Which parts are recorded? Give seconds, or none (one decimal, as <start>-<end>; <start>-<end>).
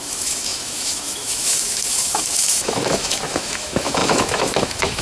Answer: none